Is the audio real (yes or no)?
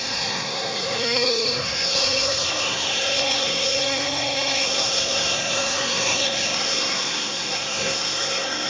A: no